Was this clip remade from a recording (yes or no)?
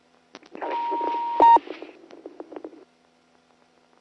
no